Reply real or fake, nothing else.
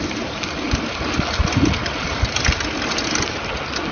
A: real